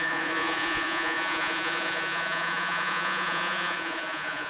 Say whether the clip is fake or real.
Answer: fake